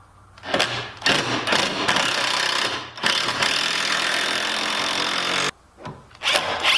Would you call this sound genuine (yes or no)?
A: yes